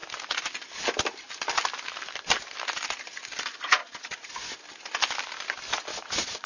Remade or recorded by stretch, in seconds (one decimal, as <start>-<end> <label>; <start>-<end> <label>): 0.0-3.8 recorded; 3.8-4.3 remade; 4.3-5.9 recorded; 5.9-6.5 remade